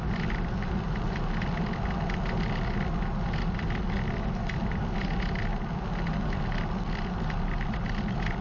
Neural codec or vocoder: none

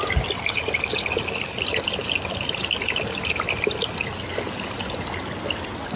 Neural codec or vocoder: none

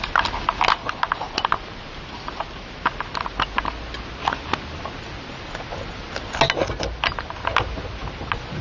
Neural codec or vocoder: none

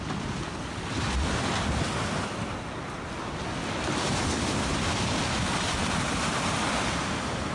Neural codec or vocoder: none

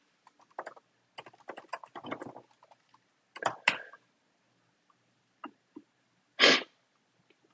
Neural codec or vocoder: none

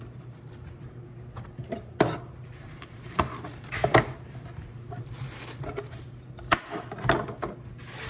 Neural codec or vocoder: vocoder, BigVGAN v2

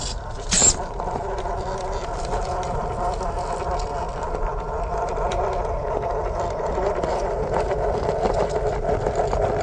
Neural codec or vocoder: none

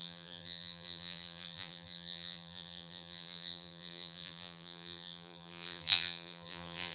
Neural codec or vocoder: vocoder, BigVGAN v2